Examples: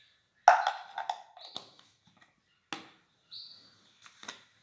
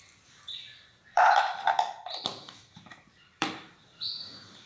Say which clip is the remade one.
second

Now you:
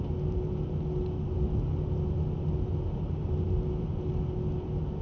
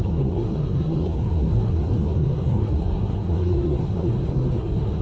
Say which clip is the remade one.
second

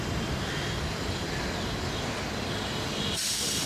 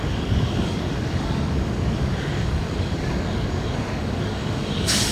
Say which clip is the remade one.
second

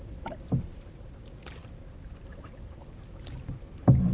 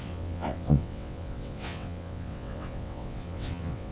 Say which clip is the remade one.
second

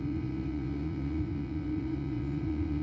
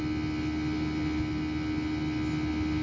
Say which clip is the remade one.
first